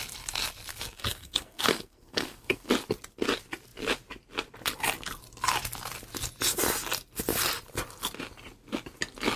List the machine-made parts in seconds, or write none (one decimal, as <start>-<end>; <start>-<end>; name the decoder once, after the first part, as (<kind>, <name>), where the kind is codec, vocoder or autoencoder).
0.7-2.7 (codec, SNAC)